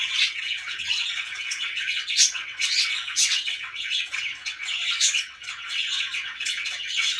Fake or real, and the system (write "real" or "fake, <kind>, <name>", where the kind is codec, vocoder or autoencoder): fake, vocoder, WaveNeXt